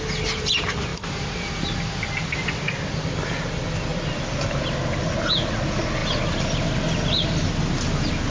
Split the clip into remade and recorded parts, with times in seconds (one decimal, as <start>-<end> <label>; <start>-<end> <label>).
0.0-0.9 recorded; 0.9-1.5 remade; 1.5-3.9 recorded; 3.9-4.8 remade; 4.8-8.3 recorded